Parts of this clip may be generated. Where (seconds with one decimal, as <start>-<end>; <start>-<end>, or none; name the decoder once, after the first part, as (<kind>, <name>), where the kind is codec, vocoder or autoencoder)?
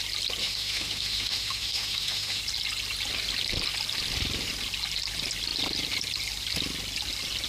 0.4-2.4 (autoencoder, DAC-VAE)